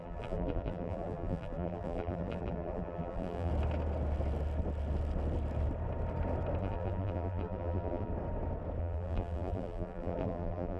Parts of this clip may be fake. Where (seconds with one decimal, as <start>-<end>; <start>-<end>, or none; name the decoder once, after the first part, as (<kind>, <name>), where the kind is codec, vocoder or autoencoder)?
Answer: 0.0-3.5 (vocoder, BigVGAN v2); 6.6-8.1; 8.8-10.8